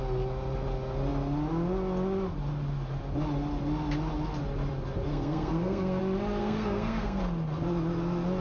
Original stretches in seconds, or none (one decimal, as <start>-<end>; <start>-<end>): 0.0-5.1; 6.0-6.4; 7.2-8.4